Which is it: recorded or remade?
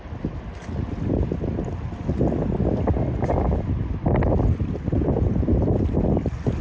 recorded